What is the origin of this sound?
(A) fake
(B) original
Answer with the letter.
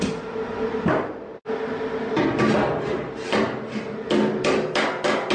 B